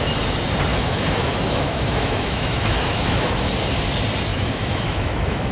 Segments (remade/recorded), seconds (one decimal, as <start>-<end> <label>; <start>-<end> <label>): 0.0-0.7 recorded; 0.7-3.5 remade; 3.5-4.3 recorded; 4.3-5.5 remade